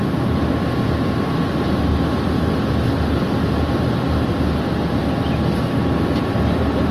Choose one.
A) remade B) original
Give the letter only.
B